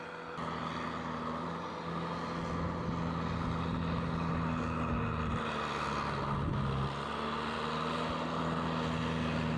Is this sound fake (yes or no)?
no